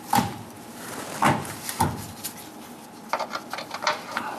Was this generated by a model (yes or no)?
no